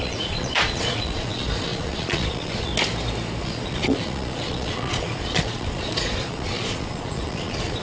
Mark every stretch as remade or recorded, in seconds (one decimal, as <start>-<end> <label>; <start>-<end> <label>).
0.0-2.7 remade; 2.7-3.4 recorded; 3.4-7.8 remade